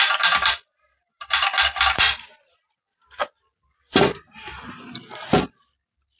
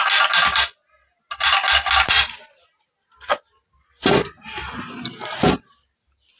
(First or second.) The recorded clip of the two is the second